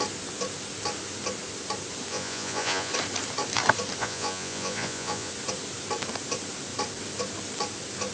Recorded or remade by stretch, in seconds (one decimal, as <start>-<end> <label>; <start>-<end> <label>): 0.0-2.1 recorded; 2.1-2.9 remade; 2.9-4.0 recorded; 4.0-5.3 remade; 5.3-8.1 recorded